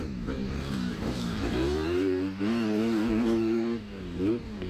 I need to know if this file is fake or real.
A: fake